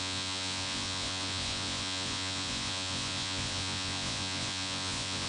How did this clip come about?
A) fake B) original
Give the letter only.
A